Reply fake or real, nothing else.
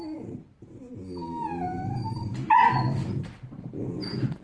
real